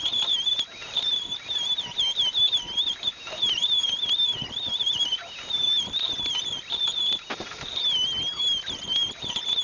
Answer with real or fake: real